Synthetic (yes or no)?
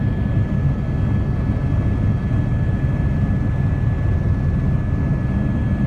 no